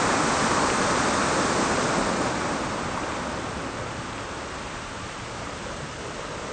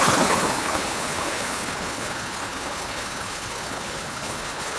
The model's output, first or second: second